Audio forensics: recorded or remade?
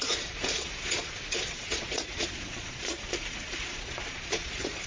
remade